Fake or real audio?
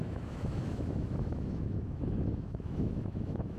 fake